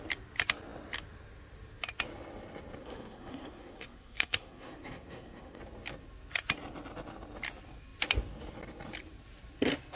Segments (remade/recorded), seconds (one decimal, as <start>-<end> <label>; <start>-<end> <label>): 0.0-2.8 recorded; 2.8-5.6 remade; 5.6-10.0 recorded